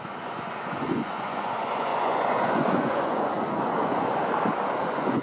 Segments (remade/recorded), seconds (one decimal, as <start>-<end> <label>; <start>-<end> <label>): 0.0-4.2 remade; 4.2-4.8 recorded; 4.8-5.2 remade